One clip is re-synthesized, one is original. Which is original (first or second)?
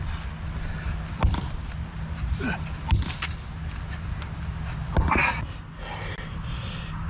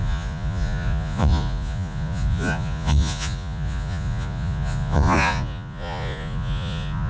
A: first